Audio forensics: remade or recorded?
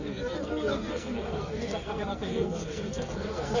remade